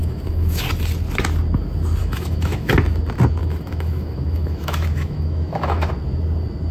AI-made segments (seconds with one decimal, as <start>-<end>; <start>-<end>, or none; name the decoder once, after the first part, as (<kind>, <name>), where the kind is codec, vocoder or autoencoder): 0.0-0.6 (autoencoder, DAC-VAE); 2.0-2.7; 3.4-5.9

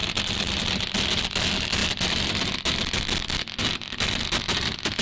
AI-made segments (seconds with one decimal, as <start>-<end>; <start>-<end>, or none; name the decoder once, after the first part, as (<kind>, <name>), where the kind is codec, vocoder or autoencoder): none

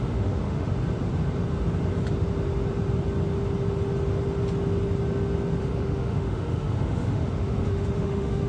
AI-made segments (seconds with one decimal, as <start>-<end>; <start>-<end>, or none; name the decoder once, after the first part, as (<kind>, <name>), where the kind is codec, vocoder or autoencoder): 0.0-0.7 (autoencoder, DAC-VAE); 5.6-8.5

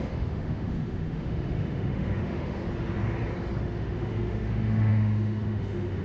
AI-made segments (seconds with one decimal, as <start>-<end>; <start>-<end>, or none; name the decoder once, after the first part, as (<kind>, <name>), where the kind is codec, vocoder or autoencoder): 0.0-2.6 (autoencoder, DAC-VAE); 3.6-6.0

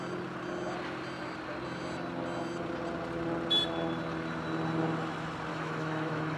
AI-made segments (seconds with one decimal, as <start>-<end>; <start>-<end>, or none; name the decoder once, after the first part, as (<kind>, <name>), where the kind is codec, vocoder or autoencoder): 5.5-6.4 (autoencoder, DAC-VAE)

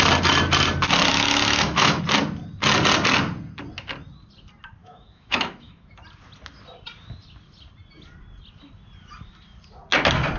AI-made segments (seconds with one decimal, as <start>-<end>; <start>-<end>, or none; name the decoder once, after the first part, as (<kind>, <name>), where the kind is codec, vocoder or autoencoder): 1.1-2.0 (autoencoder, DAC-VAE); 4.8-6.0